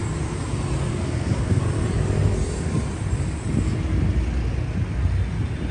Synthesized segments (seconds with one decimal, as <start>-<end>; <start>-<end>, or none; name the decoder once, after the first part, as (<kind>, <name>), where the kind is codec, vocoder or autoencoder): 0.9-1.6 (codec, SNAC)

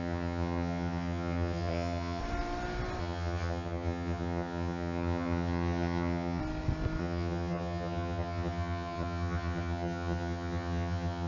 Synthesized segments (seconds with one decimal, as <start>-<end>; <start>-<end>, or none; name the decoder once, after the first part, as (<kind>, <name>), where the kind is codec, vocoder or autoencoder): 0.0-2.2 (vocoder, HiFi-GAN); 3.0-6.4; 7.0-11.3

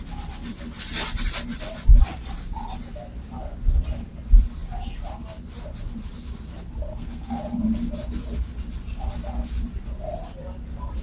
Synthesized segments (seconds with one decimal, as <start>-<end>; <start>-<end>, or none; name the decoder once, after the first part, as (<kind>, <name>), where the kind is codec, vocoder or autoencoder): 6.9-7.4 (codec, SNAC)